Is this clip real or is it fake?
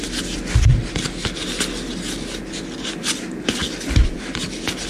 real